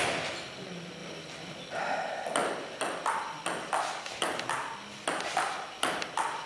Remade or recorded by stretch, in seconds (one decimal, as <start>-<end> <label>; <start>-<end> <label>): 0.0-6.5 recorded